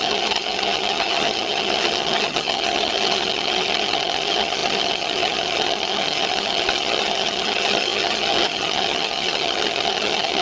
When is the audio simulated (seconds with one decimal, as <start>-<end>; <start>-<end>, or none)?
0.0-10.4